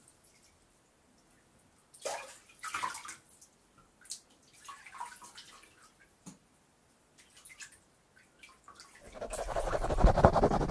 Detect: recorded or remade recorded